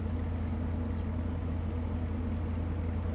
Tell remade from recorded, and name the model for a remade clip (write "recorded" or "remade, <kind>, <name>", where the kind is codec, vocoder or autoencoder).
recorded